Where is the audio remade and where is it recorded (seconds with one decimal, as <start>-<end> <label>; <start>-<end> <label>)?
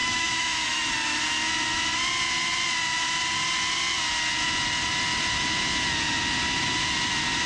0.0-0.8 remade; 0.8-7.5 recorded